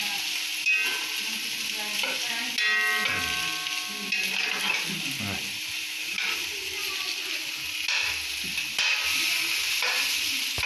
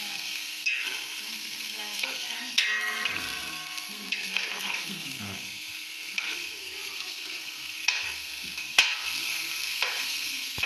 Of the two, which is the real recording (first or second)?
first